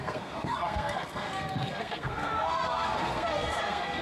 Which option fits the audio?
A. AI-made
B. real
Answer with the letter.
A